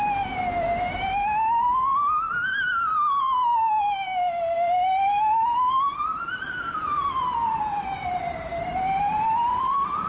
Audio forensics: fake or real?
fake